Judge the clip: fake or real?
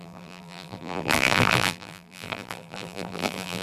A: fake